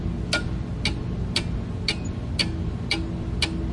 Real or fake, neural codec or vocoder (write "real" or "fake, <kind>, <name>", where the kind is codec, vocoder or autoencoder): real